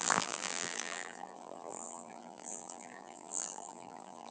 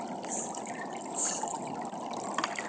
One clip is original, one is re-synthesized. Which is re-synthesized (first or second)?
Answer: first